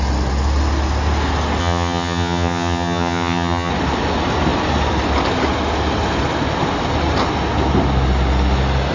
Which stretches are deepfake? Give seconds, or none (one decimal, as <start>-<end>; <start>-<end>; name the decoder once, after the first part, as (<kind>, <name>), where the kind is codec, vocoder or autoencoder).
1.6-3.7 (vocoder, HiFi-GAN)

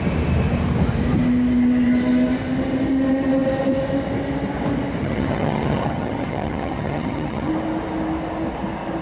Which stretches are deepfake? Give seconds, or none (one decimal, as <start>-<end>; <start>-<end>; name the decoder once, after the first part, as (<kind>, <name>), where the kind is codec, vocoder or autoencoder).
5.0-7.5 (vocoder, HiFi-GAN)

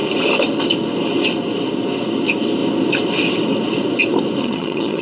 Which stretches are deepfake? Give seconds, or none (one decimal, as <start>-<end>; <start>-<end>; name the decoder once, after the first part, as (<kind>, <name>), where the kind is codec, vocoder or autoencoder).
4.4-5.0 (vocoder, HiFi-GAN)

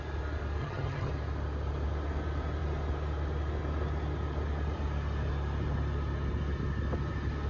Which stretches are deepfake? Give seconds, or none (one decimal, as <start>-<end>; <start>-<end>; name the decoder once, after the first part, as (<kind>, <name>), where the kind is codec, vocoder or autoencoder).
0.6-1.1 (vocoder, HiFi-GAN)

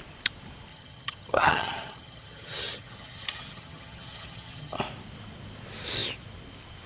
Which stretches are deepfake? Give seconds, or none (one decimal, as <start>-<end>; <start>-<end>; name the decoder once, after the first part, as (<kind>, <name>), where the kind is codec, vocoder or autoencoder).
0.7-4.8 (vocoder, HiFi-GAN)